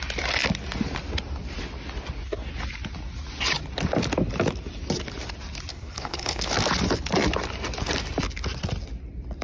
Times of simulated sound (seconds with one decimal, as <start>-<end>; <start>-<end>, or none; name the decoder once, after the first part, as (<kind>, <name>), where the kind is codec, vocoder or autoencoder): 5.7-6.5 (codec, HILCodec)